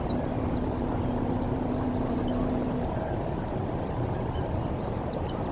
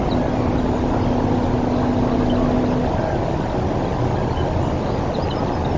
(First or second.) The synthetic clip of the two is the first